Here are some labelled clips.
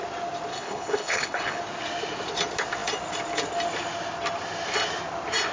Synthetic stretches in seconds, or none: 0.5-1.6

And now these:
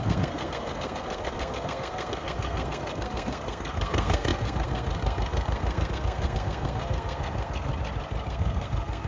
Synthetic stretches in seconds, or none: 0.0-7.7; 8.3-9.1

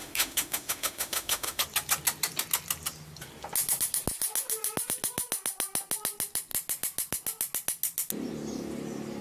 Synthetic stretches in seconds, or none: 0.0-1.6

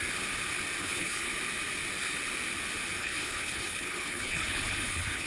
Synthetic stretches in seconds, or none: 0.8-1.3; 3.0-5.3

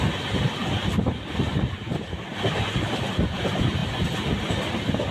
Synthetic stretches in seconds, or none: 0.6-1.5; 2.3-2.9; 3.8-4.5

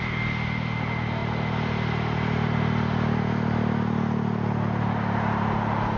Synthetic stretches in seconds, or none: none